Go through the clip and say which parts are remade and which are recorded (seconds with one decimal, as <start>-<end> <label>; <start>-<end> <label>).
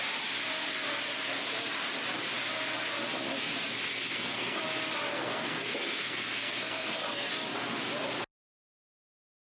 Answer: 0.0-3.9 recorded; 3.9-4.6 remade; 4.6-5.1 recorded; 5.1-7.3 remade; 7.3-9.4 recorded